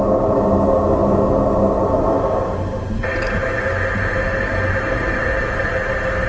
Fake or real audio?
real